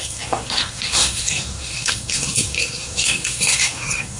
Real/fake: fake